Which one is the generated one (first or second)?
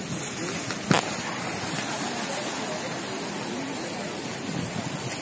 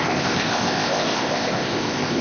second